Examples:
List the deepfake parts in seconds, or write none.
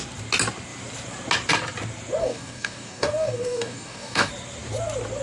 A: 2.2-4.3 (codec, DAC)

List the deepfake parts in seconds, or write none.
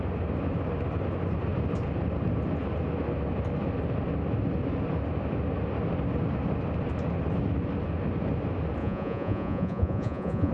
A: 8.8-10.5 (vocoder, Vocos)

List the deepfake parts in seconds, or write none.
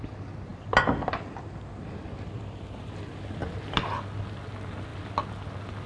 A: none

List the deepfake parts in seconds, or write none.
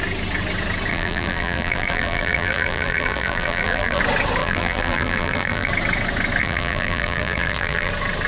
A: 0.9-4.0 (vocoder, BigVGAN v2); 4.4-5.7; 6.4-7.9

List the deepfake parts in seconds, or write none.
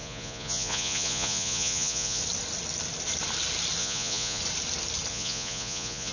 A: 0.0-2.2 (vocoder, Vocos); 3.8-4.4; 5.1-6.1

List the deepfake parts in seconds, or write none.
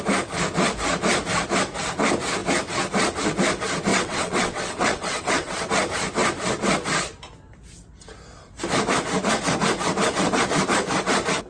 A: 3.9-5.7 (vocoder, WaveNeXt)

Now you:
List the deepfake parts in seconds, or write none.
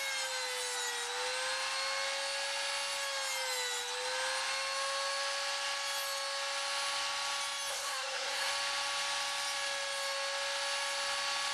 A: 7.7-8.5 (codec, SNAC)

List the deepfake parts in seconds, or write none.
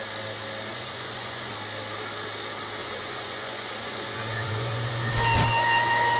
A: 0.7-1.5 (vocoder, Vocos); 2.8-5.1